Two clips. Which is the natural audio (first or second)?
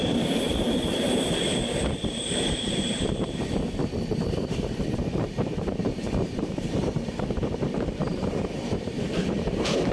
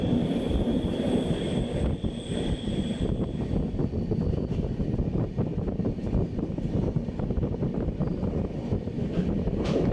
second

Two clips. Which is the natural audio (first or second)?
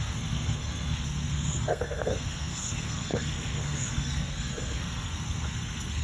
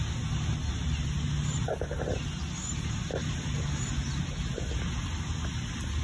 second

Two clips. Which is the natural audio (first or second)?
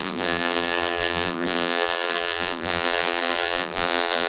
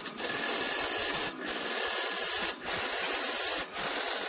second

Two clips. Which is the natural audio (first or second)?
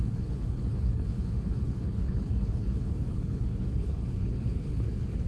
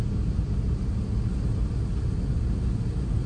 second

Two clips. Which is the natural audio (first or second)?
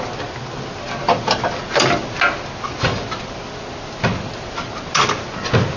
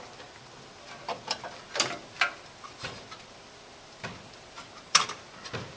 first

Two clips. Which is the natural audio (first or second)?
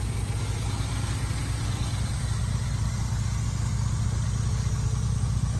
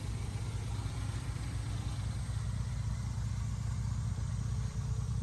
first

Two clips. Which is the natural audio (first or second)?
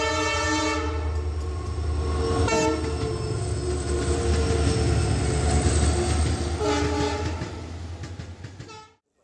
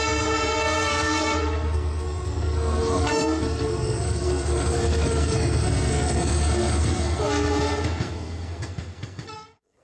first